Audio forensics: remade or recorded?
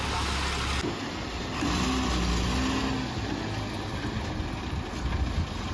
recorded